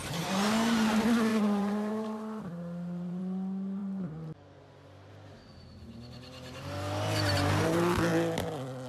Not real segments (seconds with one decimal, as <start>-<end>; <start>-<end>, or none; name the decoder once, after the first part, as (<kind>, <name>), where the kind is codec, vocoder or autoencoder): 1.3-3.2 (vocoder, BigVGAN v2); 3.8-5.1